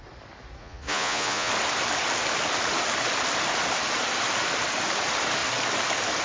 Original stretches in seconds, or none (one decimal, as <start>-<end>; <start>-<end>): 0.0-0.6; 1.5-6.2